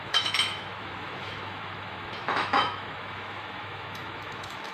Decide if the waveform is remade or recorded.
remade